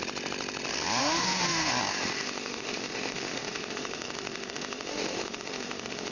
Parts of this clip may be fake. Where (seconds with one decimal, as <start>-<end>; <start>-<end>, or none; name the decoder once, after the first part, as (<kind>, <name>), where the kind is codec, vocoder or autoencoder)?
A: 1.0-1.7 (autoencoder, DAC-VAE); 2.1-6.1